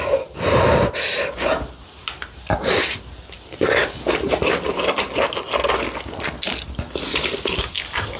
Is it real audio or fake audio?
real